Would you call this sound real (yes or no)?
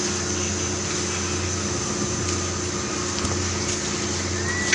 yes